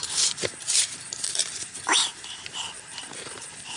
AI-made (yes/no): yes